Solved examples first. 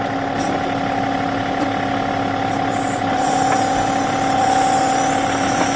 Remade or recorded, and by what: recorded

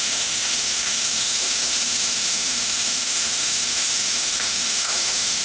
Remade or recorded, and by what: remade, autoencoder, DAC-VAE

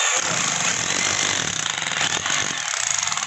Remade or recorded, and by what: recorded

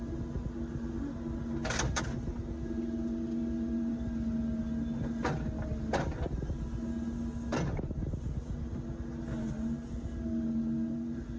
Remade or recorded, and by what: recorded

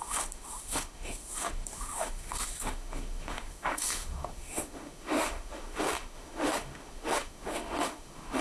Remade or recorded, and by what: remade, autoencoder, DAC-VAE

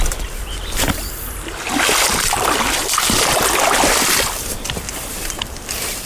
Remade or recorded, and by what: recorded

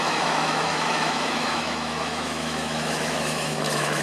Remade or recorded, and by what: remade, autoencoder, DAC-VAE